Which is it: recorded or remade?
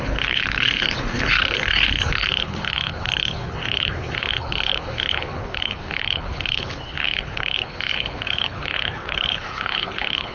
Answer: remade